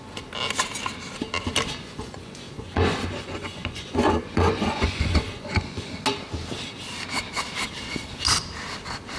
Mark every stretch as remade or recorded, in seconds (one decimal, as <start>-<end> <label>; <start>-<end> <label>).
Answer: 0.0-1.8 recorded; 1.8-5.9 remade; 5.9-9.2 recorded